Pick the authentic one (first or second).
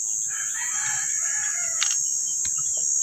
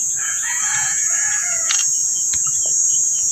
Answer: first